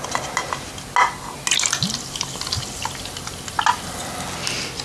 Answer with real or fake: real